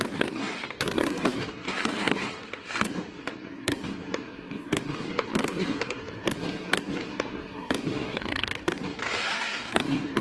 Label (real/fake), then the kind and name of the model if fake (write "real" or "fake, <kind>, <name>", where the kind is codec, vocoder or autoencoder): fake, codec, SNAC